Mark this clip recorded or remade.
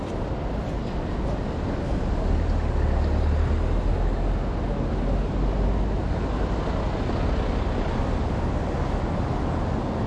recorded